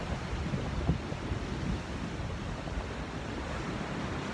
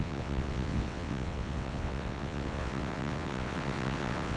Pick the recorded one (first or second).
first